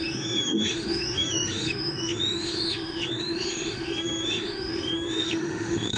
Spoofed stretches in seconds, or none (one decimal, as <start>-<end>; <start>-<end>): 0.0-6.0